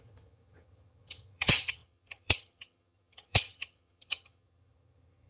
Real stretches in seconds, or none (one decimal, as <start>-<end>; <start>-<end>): none